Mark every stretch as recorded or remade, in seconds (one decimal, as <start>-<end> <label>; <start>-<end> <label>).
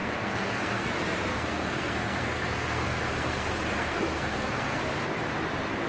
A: 0.0-0.9 remade; 0.9-1.3 recorded; 1.3-4.8 remade; 4.8-5.9 recorded